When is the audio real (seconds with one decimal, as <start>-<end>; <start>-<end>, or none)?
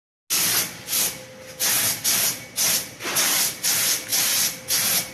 0.0-5.1